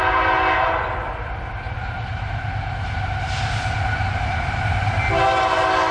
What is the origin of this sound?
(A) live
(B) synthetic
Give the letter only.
A